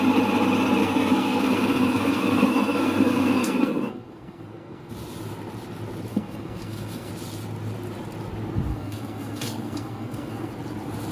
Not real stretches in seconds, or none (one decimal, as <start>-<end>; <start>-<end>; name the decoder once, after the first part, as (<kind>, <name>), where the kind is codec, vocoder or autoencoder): 0.8-4.9 (codec, SNAC); 6.1-7.1; 8.7-10.5